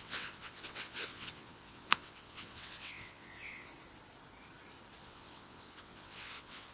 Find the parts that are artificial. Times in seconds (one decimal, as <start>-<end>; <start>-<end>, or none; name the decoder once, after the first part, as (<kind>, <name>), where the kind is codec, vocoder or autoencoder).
0.0-3.7 (vocoder, WaveNeXt); 5.0-6.7